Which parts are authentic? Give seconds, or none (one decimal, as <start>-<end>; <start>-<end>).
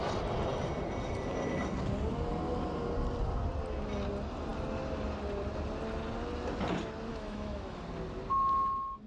0.0-7.1; 7.8-9.1